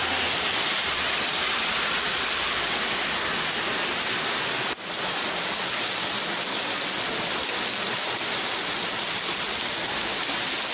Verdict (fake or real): real